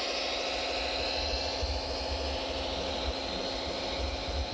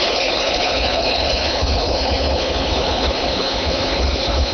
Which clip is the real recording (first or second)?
first